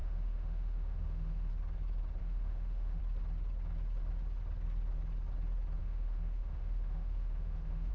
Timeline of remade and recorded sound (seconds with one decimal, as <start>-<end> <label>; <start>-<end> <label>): 0.0-1.5 remade; 1.5-2.2 recorded; 2.2-3.0 remade; 3.0-5.8 recorded; 5.8-7.9 remade

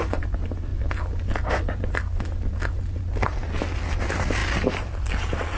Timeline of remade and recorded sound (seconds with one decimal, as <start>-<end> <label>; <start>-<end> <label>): 0.0-5.6 recorded

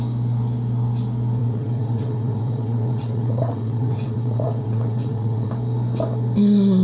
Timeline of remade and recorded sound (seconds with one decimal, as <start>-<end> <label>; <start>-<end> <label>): 0.0-1.4 recorded; 1.4-5.5 remade; 5.5-6.8 recorded

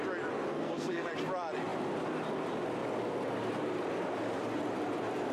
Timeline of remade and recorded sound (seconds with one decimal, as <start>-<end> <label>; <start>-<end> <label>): 0.0-0.5 recorded; 0.5-1.1 remade; 1.1-5.3 recorded

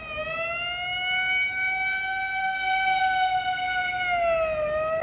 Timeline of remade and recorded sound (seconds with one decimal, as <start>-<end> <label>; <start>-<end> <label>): 0.0-2.4 recorded; 2.4-3.0 remade; 3.0-5.0 recorded

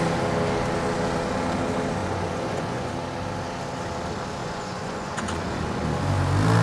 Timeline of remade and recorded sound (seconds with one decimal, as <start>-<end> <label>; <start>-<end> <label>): 0.0-2.0 recorded; 2.0-2.9 remade; 2.9-4.4 recorded; 4.4-5.8 remade; 5.8-6.6 recorded